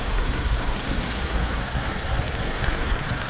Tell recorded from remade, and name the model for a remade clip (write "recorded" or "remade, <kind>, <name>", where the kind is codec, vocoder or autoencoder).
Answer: remade, codec, SNAC